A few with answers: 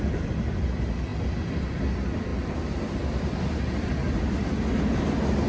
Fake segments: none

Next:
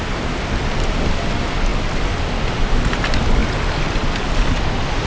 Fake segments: none

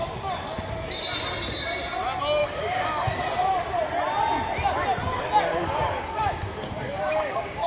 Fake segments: 2.4-3.2 (codec, DAC); 5.5-7.7

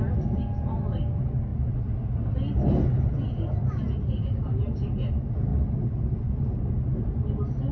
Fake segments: none